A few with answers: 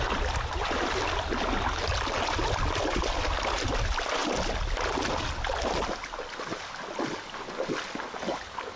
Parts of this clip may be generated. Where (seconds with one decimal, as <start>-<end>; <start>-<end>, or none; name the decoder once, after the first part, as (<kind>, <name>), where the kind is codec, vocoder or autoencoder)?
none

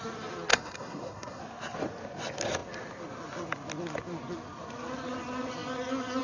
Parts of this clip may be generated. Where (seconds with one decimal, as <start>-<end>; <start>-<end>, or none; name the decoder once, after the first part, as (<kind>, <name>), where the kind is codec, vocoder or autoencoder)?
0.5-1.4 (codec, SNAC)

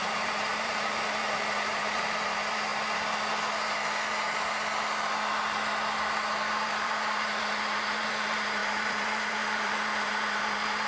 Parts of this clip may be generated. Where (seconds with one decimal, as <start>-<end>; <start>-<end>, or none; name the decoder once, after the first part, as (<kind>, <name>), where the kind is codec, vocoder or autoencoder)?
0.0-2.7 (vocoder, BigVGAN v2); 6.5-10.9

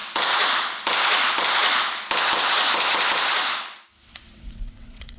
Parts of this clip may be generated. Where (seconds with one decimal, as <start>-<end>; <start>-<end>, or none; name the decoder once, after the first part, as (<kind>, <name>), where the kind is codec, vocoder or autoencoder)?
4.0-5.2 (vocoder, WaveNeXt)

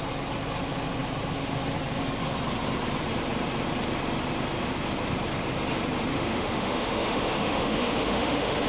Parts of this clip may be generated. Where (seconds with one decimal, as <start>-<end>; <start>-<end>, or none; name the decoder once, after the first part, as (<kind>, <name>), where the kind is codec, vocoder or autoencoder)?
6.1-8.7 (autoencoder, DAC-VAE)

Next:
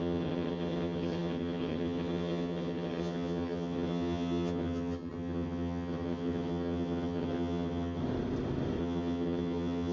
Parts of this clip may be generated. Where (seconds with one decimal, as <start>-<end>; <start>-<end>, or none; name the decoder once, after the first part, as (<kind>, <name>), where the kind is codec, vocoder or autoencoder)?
0.0-8.0 (vocoder, HiFi-GAN); 8.8-9.9